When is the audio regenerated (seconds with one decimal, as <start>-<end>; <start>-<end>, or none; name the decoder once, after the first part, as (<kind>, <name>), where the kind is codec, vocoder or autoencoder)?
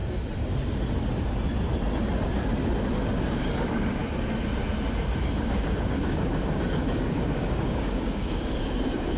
3.2-4.0 (codec, DAC); 5.2-9.2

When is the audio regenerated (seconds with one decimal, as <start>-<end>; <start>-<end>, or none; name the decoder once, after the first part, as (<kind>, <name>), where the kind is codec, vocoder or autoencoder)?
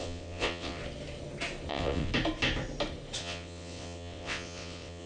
0.0-0.8 (vocoder, WaveNeXt); 1.7-2.1; 3.2-5.1